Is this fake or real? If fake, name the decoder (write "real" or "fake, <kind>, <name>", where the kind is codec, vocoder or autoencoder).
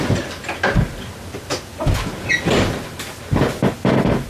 real